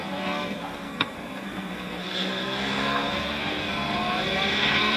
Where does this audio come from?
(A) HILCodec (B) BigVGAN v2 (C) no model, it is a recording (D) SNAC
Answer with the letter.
D